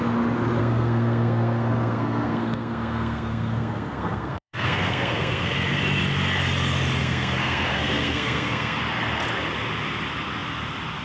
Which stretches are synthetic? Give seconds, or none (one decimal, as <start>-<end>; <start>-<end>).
0.6-5.8; 7.0-8.8